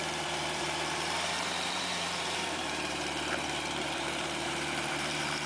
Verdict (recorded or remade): remade